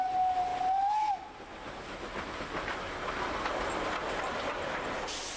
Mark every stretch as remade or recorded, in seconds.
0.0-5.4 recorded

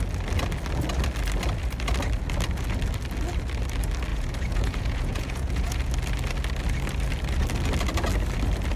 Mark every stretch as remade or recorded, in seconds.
0.0-4.1 recorded; 4.1-5.9 remade; 5.9-8.8 recorded

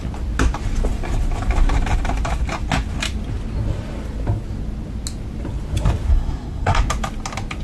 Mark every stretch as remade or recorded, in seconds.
0.0-6.1 recorded; 6.1-6.8 remade; 6.8-7.6 recorded